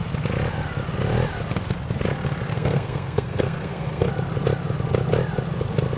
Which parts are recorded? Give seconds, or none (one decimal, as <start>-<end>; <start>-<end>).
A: 0.0-2.5; 4.1-6.0